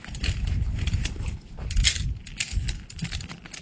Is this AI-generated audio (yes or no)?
no